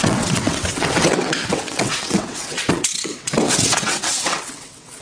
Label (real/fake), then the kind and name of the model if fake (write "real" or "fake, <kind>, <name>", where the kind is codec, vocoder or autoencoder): fake, vocoder, WaveNeXt